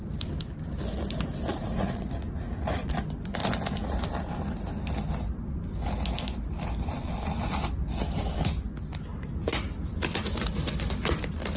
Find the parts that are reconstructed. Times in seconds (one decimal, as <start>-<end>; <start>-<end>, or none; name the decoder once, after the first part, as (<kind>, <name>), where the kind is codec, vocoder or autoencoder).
1.5-2.9 (vocoder, Vocos); 9.1-9.6